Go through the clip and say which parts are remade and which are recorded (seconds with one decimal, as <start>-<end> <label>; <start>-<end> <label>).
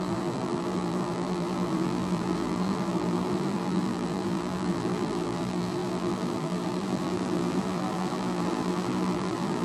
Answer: 0.0-9.6 remade